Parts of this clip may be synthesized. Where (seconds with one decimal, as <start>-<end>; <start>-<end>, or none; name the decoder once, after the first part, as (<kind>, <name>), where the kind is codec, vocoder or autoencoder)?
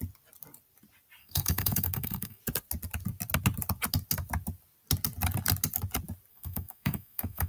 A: 1.2-2.4 (codec, SNAC); 6.3-7.5